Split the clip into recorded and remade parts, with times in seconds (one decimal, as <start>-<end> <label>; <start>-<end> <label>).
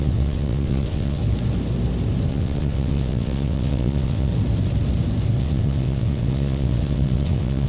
0.0-1.2 remade; 1.2-2.3 recorded; 2.3-4.3 remade; 4.3-5.4 recorded; 5.4-7.7 remade